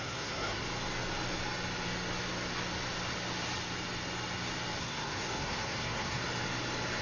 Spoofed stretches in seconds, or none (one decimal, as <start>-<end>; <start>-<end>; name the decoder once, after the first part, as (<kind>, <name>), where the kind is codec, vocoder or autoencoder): 0.0-0.6 (codec, SNAC); 4.8-6.2